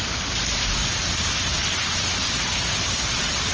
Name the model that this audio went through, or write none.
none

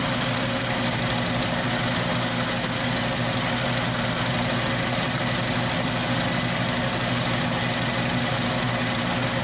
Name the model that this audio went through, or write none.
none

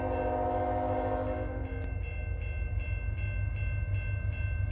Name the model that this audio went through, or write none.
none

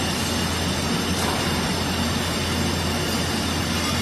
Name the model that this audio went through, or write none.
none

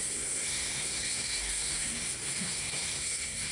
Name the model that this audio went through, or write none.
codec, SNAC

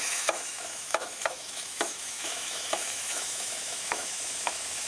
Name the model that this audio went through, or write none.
autoencoder, DAC-VAE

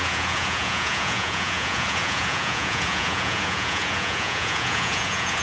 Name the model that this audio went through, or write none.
vocoder, Vocos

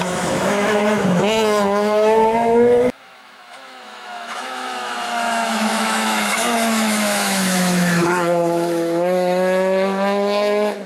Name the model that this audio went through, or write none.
autoencoder, DAC-VAE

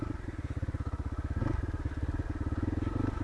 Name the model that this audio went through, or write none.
none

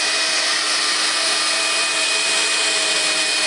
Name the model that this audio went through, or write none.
none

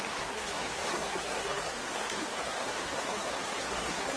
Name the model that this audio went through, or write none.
codec, SNAC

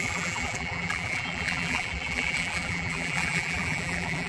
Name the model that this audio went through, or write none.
vocoder, BigVGAN v2